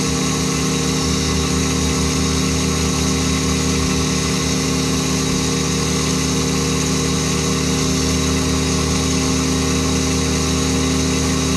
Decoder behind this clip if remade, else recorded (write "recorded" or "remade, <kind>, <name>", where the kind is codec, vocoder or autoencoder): recorded